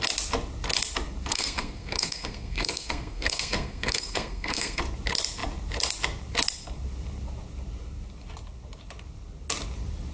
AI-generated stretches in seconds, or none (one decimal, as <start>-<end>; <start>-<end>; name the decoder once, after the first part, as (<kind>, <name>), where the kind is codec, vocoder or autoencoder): 1.3-4.8 (codec, SNAC)